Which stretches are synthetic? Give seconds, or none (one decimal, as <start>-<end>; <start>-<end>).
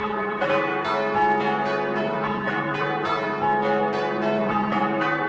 0.0-0.7; 2.0-3.3; 4.4-5.3